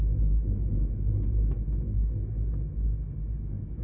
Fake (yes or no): no